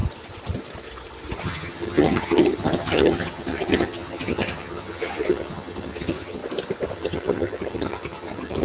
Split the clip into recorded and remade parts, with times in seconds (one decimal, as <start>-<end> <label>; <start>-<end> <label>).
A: 0.0-1.4 recorded; 1.4-6.4 remade; 6.4-6.9 recorded; 6.9-8.6 remade